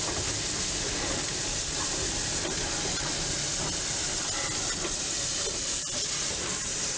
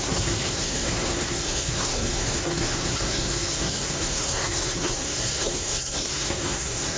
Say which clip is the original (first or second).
first